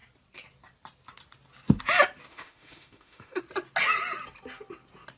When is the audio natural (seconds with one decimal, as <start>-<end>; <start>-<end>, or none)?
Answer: 0.0-2.3; 3.4-5.2